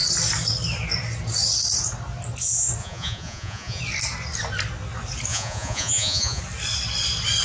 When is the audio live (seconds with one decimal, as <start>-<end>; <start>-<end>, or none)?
0.0-2.8; 3.8-5.3; 6.4-7.4

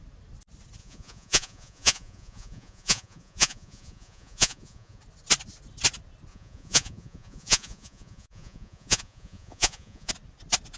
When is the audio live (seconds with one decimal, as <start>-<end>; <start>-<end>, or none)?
0.0-0.8; 5.0-6.3; 10.1-10.8